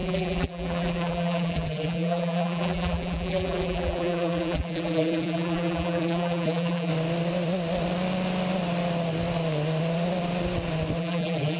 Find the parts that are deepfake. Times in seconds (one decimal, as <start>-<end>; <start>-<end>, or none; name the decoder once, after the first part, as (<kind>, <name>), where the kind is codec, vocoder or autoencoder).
0.0-6.9 (vocoder, BigVGAN v2); 11.0-11.6